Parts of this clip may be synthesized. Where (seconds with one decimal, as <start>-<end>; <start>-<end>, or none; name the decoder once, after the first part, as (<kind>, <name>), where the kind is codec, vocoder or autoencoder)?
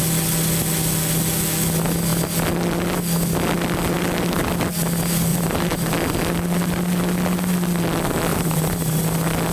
5.3-5.9 (vocoder, BigVGAN v2); 8.3-9.0